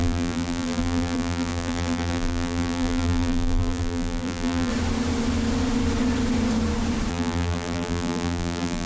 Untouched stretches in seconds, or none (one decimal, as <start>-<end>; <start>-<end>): 4.7-7.1